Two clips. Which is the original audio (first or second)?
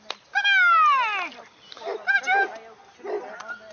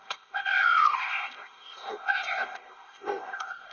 first